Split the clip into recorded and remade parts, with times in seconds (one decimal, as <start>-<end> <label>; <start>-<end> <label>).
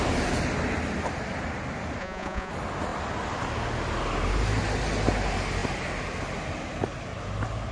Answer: 0.0-2.0 recorded; 2.0-2.5 remade; 2.5-7.7 recorded